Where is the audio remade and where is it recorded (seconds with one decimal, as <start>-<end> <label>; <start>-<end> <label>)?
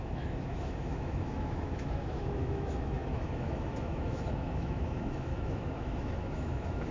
0.0-6.9 remade